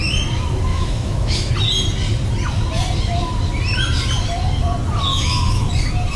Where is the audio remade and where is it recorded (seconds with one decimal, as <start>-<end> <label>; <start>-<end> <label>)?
0.0-0.7 recorded; 0.7-1.5 remade; 1.5-5.1 recorded; 5.1-5.7 remade; 5.7-6.2 recorded